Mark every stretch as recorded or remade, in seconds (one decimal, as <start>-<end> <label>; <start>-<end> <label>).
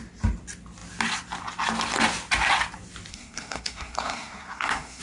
0.0-3.1 recorded; 3.1-5.0 remade